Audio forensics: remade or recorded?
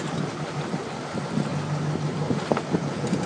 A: recorded